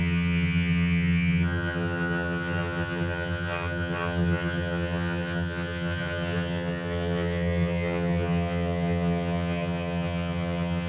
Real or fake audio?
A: fake